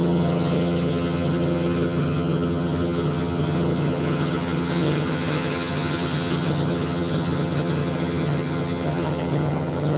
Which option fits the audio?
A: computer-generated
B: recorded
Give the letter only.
A